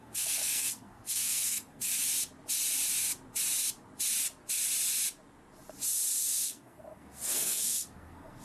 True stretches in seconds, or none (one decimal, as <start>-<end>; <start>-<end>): 1.9-6.2